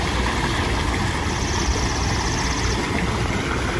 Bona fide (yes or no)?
yes